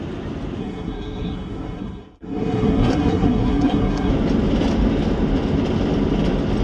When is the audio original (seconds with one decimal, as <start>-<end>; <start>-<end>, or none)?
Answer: 0.0-0.6; 4.1-6.6